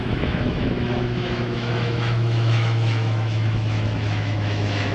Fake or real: fake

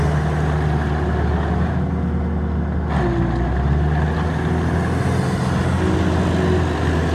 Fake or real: real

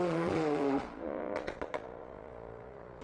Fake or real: fake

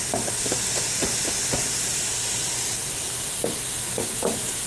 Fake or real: real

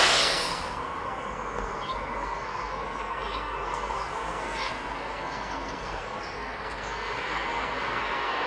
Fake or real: fake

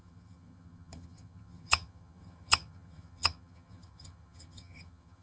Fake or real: fake